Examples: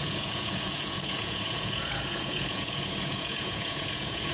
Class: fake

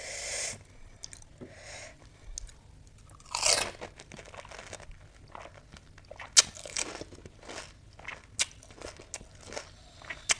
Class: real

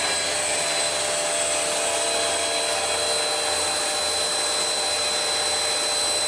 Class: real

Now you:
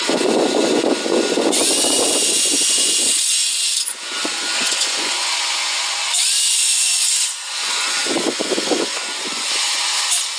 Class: fake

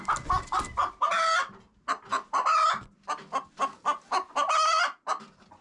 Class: real